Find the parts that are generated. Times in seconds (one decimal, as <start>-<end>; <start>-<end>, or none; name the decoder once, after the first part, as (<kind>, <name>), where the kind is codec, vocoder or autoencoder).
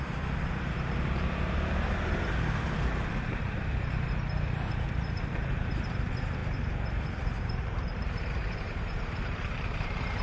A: 0.0-10.2 (vocoder, BigVGAN v2)